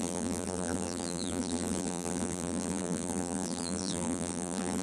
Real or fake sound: fake